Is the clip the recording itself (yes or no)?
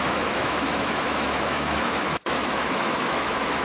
no